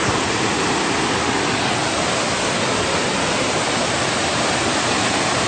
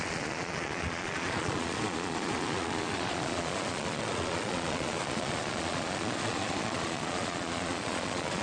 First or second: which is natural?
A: first